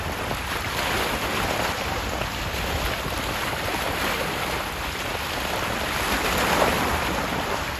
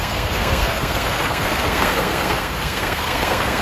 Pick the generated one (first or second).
second